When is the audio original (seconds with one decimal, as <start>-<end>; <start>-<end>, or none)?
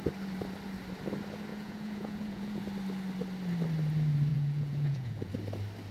0.0-1.5; 2.6-4.3; 5.3-5.9